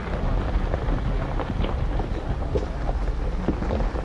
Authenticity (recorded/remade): recorded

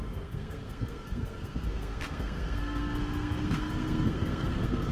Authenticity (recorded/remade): remade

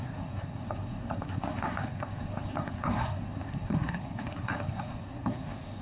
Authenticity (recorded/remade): remade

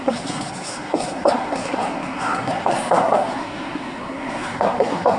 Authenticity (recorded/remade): remade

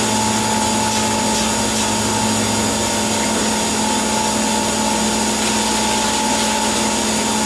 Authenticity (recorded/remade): recorded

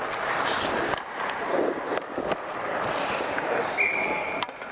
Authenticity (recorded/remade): recorded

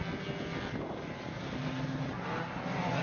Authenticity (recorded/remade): recorded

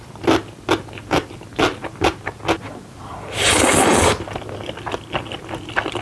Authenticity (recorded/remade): recorded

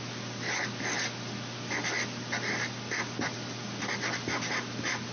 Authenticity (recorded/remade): recorded